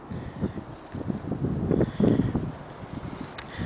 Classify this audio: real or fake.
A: real